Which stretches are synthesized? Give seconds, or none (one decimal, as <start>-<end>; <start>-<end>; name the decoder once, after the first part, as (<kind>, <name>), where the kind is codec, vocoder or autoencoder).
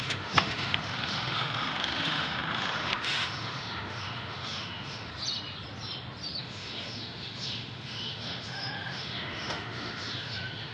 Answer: 0.0-5.1 (autoencoder, DAC-VAE); 6.4-10.7